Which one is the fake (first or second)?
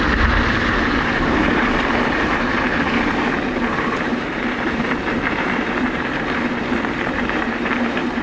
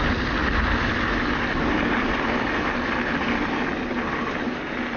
first